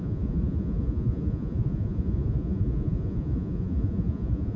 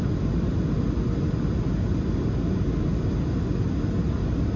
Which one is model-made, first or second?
first